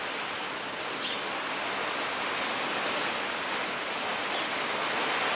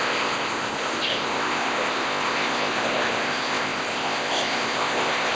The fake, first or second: second